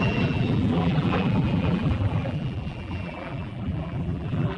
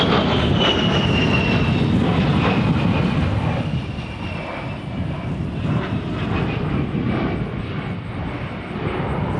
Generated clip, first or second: first